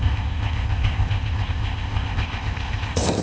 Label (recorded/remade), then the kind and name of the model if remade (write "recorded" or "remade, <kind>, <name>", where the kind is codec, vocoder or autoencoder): remade, codec, ZipCodec